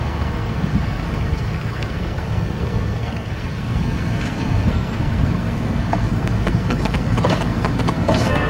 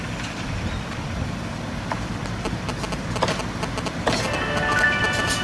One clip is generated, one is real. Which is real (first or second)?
second